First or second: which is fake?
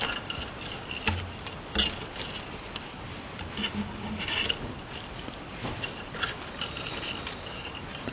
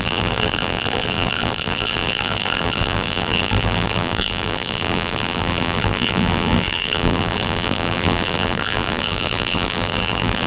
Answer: second